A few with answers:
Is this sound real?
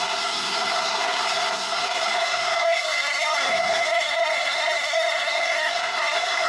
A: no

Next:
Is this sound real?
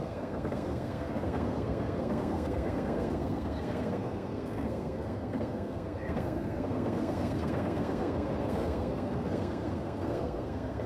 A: no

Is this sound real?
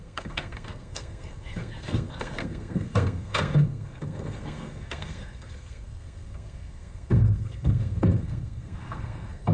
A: no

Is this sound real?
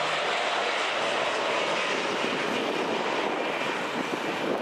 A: yes